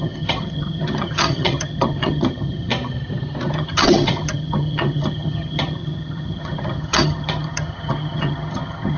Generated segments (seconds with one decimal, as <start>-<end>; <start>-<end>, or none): 0.0-2.7; 3.5-9.0